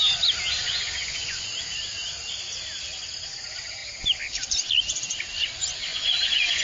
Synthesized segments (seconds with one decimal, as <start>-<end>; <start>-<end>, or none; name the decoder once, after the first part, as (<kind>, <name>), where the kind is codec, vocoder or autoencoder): 0.6-1.5 (vocoder, Vocos); 5.9-6.6